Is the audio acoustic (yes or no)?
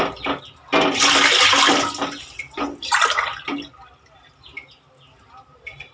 yes